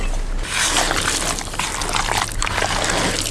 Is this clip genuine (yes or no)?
yes